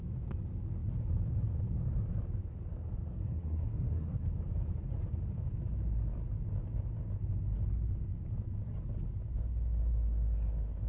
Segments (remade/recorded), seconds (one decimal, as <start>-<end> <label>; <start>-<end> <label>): 0.0-3.1 recorded; 3.1-4.3 remade; 4.3-10.9 recorded